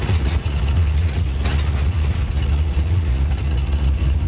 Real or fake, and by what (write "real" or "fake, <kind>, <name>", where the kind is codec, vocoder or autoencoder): fake, vocoder, Vocos